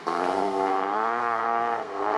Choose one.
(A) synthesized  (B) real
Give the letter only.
A